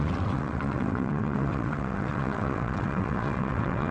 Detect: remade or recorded remade